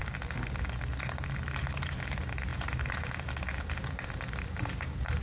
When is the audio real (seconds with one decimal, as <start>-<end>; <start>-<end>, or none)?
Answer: 0.0-5.2